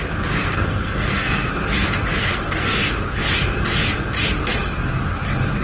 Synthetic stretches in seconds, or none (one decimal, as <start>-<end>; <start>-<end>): 0.4-1.5; 2.2-2.8